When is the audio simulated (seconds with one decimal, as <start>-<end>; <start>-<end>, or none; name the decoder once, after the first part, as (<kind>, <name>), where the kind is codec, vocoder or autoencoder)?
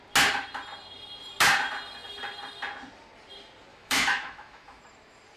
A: 3.7-4.8 (autoencoder, DAC-VAE)